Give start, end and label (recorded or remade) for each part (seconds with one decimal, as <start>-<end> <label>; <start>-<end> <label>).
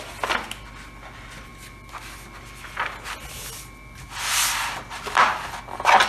0.0-6.1 recorded